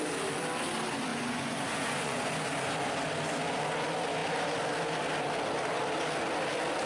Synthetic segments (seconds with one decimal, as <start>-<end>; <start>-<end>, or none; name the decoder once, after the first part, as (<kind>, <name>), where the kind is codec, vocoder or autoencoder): 1.1-2.2 (vocoder, Vocos)